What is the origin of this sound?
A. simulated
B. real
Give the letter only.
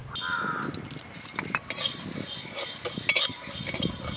B